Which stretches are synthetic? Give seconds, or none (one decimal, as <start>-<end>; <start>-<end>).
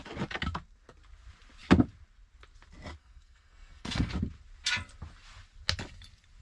3.0-4.1